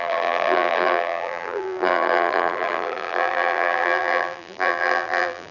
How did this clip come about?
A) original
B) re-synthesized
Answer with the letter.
B